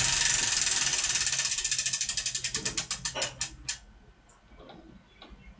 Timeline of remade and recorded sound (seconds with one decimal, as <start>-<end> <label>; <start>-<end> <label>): 0.0-5.6 recorded